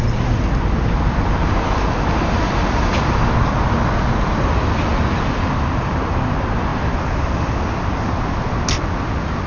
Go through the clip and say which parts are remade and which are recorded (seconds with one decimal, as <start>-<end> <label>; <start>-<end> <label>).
0.0-9.5 recorded